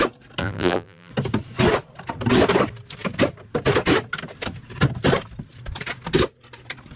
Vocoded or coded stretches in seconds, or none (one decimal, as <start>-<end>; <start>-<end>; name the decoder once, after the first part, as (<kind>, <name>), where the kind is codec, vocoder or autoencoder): 0.4-1.1 (vocoder, BigVGAN v2)